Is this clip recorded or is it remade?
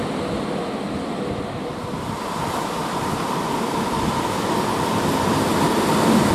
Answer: recorded